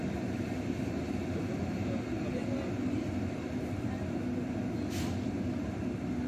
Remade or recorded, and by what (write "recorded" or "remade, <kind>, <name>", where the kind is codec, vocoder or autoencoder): recorded